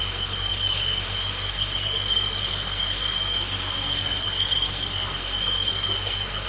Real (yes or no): no